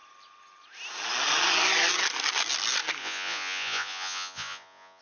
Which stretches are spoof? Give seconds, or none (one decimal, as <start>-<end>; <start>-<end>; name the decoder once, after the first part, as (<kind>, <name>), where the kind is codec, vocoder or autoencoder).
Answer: 3.0-5.0 (vocoder, Vocos)